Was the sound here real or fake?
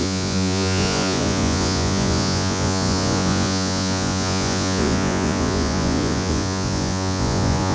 fake